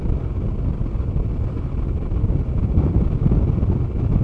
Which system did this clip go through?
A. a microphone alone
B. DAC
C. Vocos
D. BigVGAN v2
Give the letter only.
A